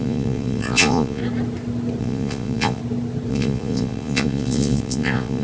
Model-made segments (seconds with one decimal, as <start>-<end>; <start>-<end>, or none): 0.0-1.2; 2.0-2.8; 3.3-5.4